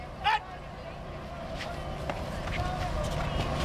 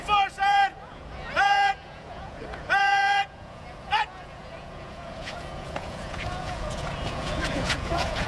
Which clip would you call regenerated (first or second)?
second